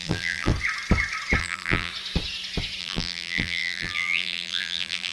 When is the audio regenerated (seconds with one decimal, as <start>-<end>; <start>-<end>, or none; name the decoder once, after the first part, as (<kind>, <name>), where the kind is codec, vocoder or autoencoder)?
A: 0.0-0.5 (vocoder, BigVGAN v2); 1.4-1.9; 2.8-5.1